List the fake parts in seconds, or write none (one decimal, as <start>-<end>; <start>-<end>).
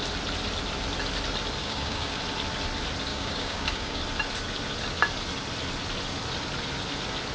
1.6-2.2; 3.1-4.0